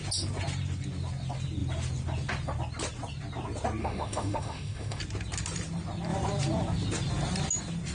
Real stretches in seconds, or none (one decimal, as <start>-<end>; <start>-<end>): 0.0-3.8; 5.0-7.9